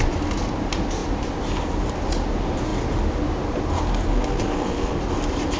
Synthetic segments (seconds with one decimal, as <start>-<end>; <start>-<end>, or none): 4.1-5.0